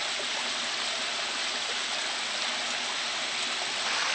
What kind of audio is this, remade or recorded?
recorded